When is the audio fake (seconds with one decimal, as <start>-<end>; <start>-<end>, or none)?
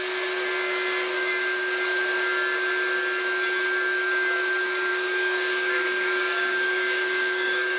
4.9-7.8